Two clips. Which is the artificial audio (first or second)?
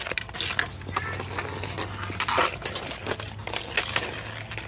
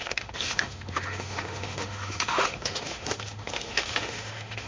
second